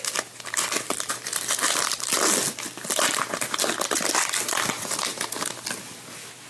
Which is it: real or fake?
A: real